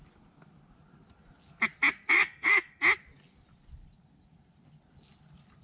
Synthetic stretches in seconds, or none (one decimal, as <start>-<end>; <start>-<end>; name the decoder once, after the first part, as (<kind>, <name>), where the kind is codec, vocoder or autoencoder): 2.1-2.8 (codec, SNAC)

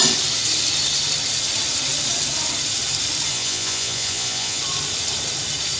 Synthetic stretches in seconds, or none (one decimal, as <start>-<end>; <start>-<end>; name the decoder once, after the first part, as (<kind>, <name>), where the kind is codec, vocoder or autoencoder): 3.3-4.6 (vocoder, Vocos)

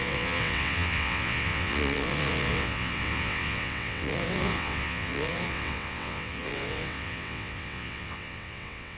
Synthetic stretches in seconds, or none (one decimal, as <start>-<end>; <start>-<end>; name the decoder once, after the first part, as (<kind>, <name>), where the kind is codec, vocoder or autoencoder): 0.0-9.0 (vocoder, WaveNeXt)

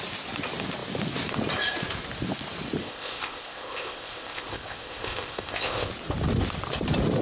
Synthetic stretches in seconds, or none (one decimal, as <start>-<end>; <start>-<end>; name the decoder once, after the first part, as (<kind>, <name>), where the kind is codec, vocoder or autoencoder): 2.8-5.9 (codec, ZipCodec)

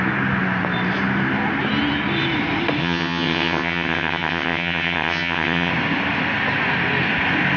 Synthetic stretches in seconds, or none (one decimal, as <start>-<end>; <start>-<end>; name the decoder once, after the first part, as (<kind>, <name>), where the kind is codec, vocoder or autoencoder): 2.8-5.7 (vocoder, HiFi-GAN)

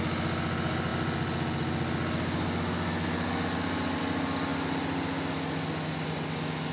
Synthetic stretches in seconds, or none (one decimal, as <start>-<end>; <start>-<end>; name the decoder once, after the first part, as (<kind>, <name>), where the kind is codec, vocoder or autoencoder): none

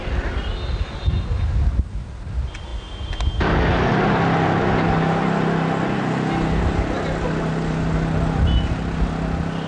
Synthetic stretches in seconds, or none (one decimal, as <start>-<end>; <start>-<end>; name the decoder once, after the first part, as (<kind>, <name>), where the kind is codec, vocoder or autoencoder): none